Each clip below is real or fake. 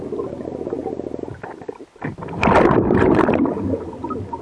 real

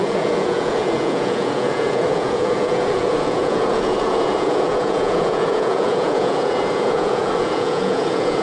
fake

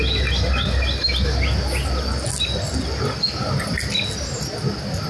real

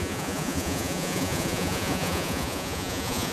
fake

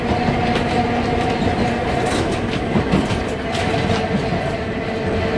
real